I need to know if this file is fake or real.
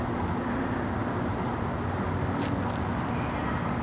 real